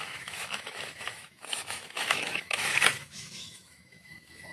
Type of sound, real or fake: fake